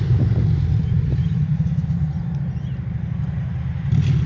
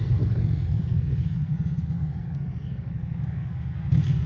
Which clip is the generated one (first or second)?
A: second